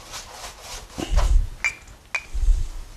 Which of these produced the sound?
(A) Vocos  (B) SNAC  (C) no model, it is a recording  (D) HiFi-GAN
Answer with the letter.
C